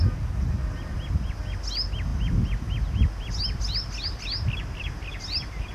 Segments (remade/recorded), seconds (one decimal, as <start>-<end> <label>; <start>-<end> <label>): 0.0-5.7 recorded